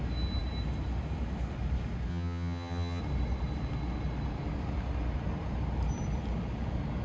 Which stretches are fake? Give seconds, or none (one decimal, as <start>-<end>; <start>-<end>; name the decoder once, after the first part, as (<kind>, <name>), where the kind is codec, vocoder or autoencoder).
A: 2.1-3.0 (vocoder, HiFi-GAN)